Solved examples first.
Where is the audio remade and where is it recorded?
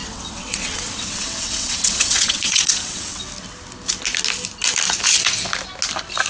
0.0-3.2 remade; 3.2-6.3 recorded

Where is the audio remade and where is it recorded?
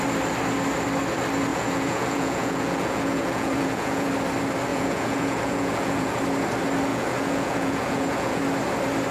0.0-1.5 recorded; 1.5-4.1 remade; 4.1-4.7 recorded; 4.7-6.2 remade; 6.2-6.9 recorded; 6.9-8.4 remade; 8.4-9.1 recorded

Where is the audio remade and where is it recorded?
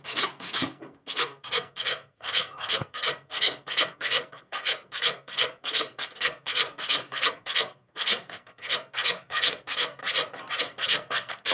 0.0-10.0 remade; 10.0-10.6 recorded; 10.6-11.5 remade